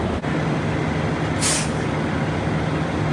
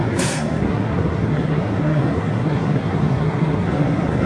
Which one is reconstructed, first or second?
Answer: second